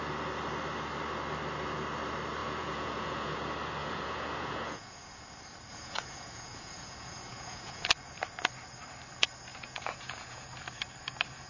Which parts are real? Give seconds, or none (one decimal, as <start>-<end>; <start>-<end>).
0.0-2.4; 3.4-3.8; 5.2-5.7; 7.9-9.5; 10.5-11.5